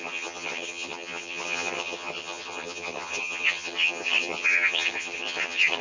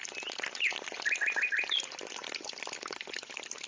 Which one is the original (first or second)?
second